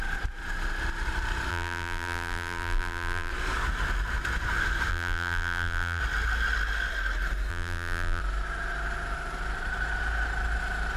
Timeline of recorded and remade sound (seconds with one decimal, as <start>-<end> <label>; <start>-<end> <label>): 0.0-1.5 recorded; 1.5-3.3 remade; 3.3-4.9 recorded; 4.9-6.0 remade; 6.0-7.5 recorded; 7.5-8.2 remade; 8.2-11.0 recorded